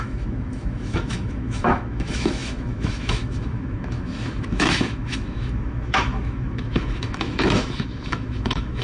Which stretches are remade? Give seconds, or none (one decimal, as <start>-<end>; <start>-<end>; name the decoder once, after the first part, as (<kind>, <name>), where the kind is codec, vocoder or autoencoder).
0.0-8.8 (autoencoder, DAC-VAE)